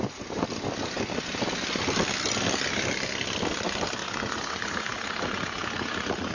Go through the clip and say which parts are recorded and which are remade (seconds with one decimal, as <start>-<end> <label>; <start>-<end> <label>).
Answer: 0.0-4.0 recorded; 4.0-6.3 remade